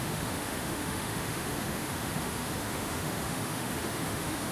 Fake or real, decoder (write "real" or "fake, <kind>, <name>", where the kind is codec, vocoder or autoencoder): fake, autoencoder, DAC-VAE